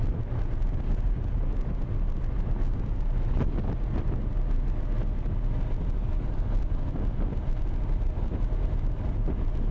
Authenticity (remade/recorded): recorded